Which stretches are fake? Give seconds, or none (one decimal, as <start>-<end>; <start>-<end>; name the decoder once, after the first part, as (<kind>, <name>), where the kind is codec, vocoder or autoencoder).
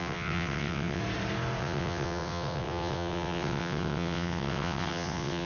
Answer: 0.0-1.0 (vocoder, WaveNeXt); 1.6-5.5